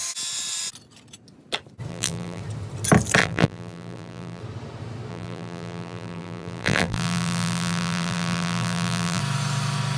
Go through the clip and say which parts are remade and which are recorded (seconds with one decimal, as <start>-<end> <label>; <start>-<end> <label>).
0.0-1.9 recorded; 1.9-2.4 remade; 2.4-3.2 recorded; 3.2-4.4 remade; 4.4-5.1 recorded; 5.1-9.2 remade; 9.2-10.0 recorded